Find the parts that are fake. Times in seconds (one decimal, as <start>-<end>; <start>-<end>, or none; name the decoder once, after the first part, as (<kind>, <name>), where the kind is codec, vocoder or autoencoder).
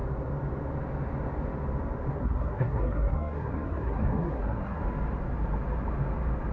2.1-4.8 (codec, SNAC)